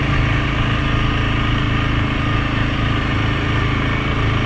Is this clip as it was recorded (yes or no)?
yes